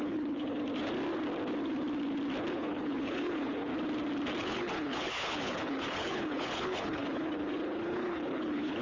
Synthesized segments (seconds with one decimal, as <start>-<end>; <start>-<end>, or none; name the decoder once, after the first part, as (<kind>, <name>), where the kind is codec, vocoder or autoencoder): 0.0-0.6 (codec, HILCodec); 2.5-3.7; 4.4-8.8